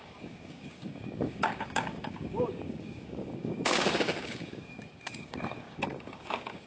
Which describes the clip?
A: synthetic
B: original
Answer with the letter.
A